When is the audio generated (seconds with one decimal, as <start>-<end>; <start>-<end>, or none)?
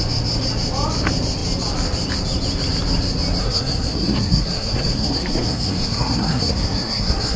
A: 3.4-7.4